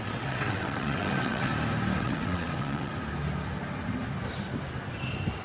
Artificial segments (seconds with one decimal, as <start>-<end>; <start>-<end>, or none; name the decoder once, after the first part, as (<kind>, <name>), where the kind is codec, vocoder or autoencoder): 0.0-1.5 (vocoder, WaveNeXt); 2.0-2.9